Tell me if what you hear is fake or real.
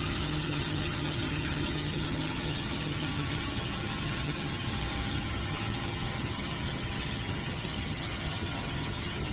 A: fake